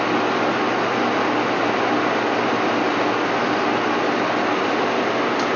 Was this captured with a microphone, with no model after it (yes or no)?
yes